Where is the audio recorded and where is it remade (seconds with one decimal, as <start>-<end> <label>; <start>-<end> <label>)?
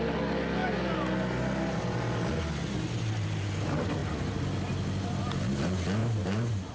0.0-6.0 recorded; 6.0-6.7 remade